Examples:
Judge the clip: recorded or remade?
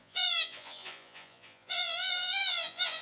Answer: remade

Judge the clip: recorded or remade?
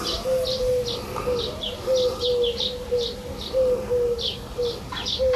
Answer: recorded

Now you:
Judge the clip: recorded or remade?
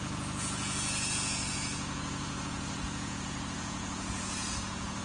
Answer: remade